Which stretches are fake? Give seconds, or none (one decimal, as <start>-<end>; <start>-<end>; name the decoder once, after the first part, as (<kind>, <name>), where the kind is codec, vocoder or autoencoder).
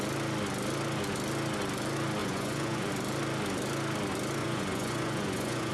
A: 2.2-2.9 (vocoder, Vocos); 4.4-5.7